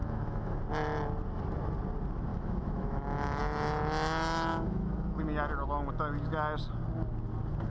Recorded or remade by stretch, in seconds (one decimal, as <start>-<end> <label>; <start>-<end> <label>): 0.0-0.6 remade; 0.6-2.3 recorded; 2.3-3.4 remade; 3.4-4.5 recorded; 4.5-5.2 remade; 5.2-7.7 recorded